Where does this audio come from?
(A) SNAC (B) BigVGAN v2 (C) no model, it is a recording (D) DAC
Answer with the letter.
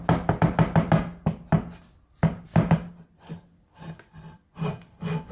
C